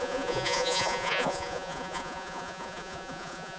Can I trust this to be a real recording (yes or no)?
no